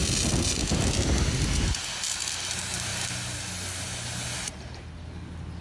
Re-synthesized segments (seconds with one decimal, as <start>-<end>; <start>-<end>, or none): none